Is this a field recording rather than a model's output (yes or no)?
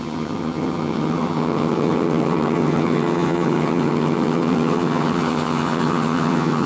no